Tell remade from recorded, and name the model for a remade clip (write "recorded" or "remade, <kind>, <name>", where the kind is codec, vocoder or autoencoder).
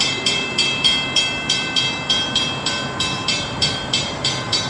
remade, vocoder, BigVGAN v2